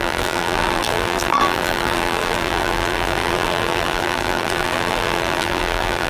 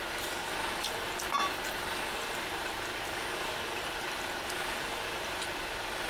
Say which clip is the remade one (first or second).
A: first